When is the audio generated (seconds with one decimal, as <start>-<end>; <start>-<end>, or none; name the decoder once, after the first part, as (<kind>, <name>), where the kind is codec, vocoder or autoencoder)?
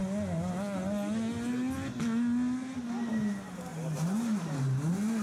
3.7-4.4 (vocoder, BigVGAN v2)